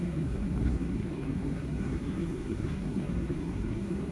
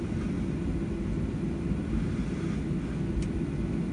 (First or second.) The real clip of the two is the second